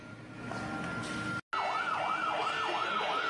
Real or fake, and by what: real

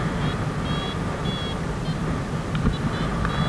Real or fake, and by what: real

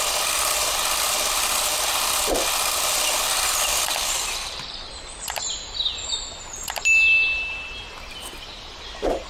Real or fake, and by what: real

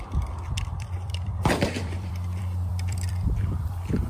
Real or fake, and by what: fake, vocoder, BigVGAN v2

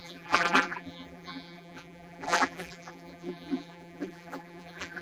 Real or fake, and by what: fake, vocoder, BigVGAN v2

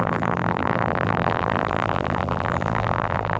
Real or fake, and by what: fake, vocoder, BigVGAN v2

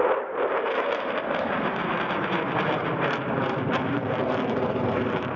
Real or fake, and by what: fake, vocoder, BigVGAN v2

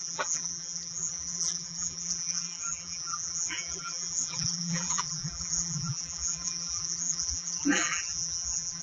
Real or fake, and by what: fake, vocoder, BigVGAN v2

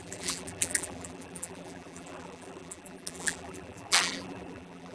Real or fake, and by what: fake, vocoder, BigVGAN v2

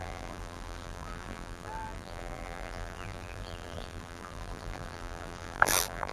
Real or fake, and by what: fake, vocoder, BigVGAN v2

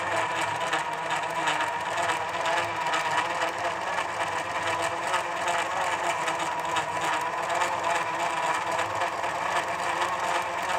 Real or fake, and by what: real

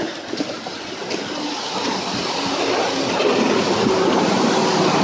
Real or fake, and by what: real